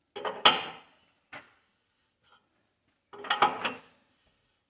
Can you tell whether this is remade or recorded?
recorded